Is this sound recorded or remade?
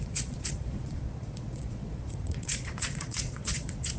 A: remade